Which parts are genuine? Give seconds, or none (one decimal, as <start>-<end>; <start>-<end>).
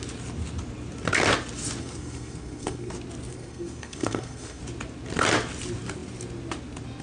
0.0-1.8; 2.9-3.3; 4.6-7.0